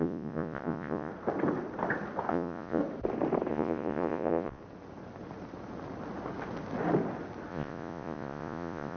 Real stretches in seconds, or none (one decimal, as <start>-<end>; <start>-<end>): 1.1-2.3; 2.8-3.5; 4.6-7.5